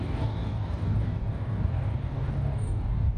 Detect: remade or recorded remade